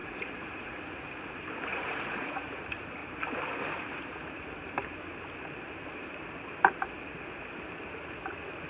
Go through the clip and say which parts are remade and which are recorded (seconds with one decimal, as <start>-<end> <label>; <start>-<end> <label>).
0.0-0.8 remade; 0.8-1.7 recorded; 1.7-2.6 remade; 2.6-8.7 recorded